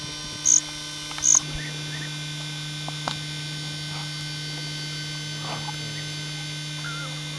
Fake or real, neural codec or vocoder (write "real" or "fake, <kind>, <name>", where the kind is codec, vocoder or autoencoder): real